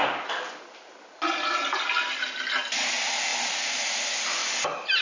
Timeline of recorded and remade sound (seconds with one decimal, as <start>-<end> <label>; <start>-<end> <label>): 0.0-5.0 recorded

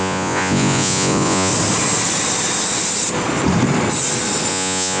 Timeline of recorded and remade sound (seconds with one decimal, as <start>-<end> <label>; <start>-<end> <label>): 0.0-1.5 remade; 1.5-4.5 recorded; 4.5-5.0 remade